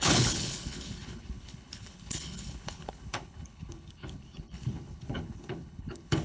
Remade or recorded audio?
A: remade